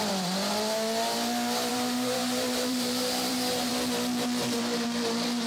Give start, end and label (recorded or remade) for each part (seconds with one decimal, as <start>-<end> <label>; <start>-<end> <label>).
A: 0.0-1.7 recorded; 1.7-3.7 remade; 3.7-5.5 recorded